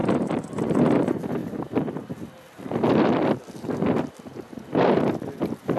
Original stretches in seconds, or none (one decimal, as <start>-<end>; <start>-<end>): 0.0-5.8